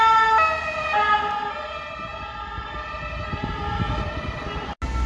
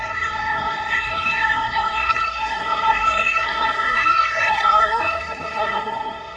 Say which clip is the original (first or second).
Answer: first